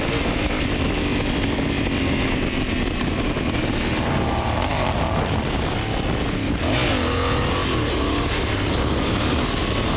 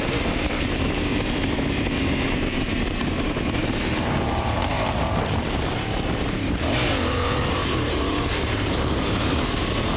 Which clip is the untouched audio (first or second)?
first